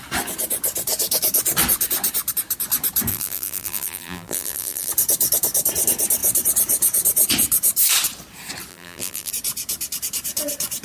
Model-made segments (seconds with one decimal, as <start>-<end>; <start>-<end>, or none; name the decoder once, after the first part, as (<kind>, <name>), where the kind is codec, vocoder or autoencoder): 3.1-4.9 (vocoder, BigVGAN v2); 8.7-9.3